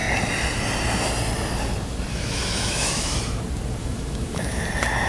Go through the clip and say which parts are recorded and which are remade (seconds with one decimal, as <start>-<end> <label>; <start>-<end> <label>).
0.0-2.1 recorded; 2.1-3.2 remade; 3.2-3.8 recorded; 3.8-4.6 remade; 4.6-5.1 recorded